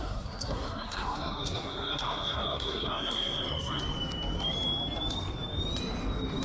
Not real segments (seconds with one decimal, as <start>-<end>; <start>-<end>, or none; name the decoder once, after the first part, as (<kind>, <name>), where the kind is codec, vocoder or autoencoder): 0.0-3.8 (codec, SNAC)